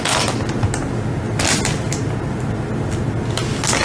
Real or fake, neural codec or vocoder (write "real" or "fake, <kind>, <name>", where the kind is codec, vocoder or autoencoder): real